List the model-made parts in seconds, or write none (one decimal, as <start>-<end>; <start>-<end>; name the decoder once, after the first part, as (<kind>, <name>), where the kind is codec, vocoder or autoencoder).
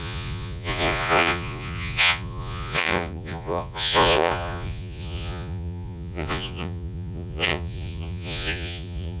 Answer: 0.0-9.2 (vocoder, Vocos)